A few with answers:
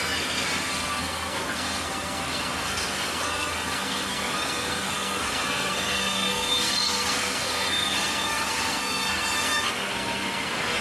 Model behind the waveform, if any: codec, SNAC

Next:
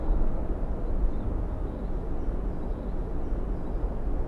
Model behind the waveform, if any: none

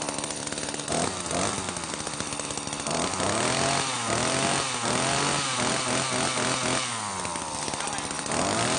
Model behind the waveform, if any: none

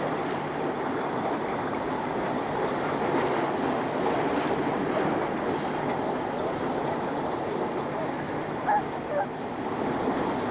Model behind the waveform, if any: none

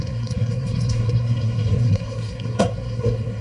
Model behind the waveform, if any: codec, SNAC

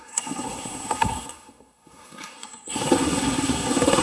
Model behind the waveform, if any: codec, SNAC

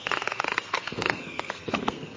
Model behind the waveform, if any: codec, SNAC